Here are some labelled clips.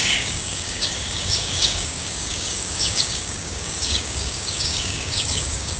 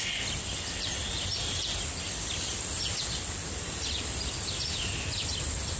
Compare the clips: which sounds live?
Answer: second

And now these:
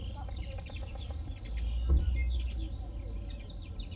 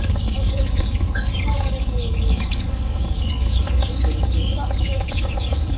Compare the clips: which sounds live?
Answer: first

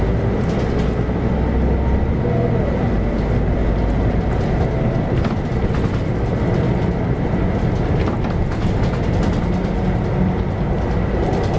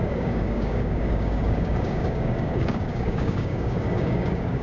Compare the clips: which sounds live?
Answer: first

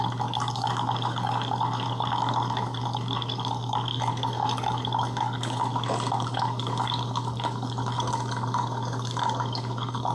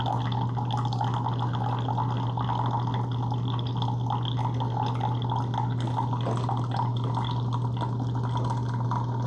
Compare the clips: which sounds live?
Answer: second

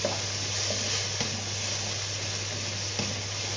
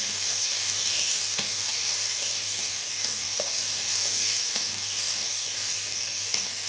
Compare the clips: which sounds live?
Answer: first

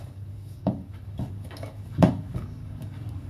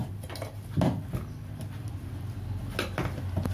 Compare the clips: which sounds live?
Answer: second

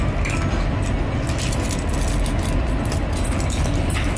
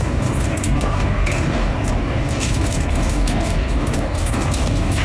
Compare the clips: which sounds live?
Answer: first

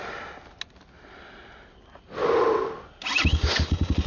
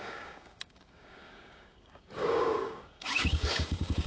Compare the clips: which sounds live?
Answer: first